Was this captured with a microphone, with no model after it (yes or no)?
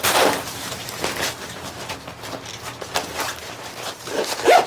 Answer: yes